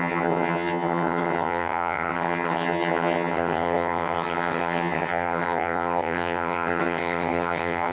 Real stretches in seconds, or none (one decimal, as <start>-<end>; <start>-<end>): none